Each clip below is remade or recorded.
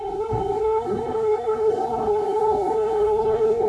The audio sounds remade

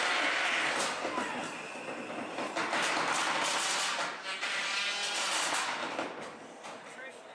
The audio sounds recorded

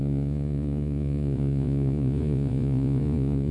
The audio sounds remade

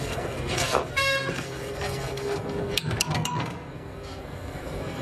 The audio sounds remade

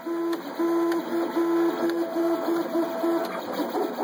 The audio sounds recorded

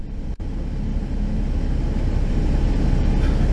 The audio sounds recorded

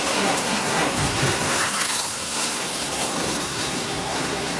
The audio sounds remade